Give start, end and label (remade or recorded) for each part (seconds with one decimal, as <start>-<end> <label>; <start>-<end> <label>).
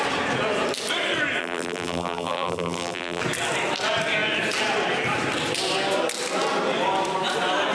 0.0-1.4 recorded; 1.4-3.2 remade; 3.2-7.7 recorded